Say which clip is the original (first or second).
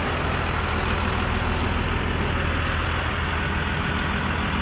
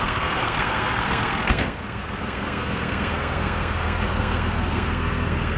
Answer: first